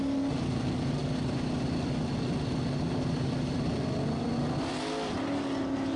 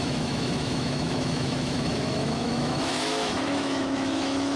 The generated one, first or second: second